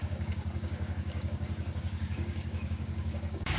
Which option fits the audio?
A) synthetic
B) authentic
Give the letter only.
A